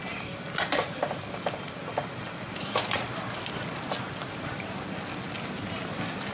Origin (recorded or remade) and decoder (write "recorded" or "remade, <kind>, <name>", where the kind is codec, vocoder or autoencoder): recorded